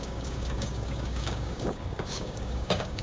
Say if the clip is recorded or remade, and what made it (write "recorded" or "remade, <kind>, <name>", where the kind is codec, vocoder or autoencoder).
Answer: remade, codec, DAC